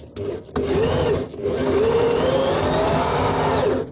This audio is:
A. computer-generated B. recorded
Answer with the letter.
B